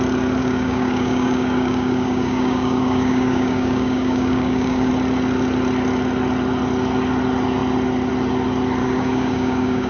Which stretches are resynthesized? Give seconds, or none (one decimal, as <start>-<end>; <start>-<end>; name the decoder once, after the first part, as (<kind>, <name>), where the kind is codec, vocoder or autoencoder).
0.4-4.9 (codec, DAC); 8.8-9.9